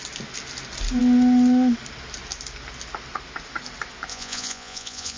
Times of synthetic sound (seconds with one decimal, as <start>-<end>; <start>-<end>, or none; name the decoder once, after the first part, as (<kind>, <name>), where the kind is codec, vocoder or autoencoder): 4.1-5.2 (vocoder, Vocos)